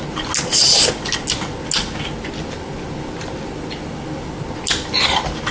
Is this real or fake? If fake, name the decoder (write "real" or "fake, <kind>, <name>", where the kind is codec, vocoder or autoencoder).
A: real